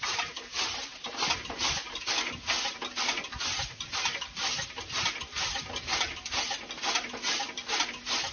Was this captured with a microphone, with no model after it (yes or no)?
yes